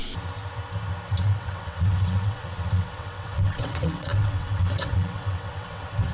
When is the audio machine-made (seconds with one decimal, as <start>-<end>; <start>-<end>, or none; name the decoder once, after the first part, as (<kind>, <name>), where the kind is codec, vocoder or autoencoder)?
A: 1.2-6.1 (vocoder, WaveNeXt)